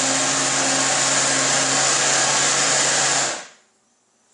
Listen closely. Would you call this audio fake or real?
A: real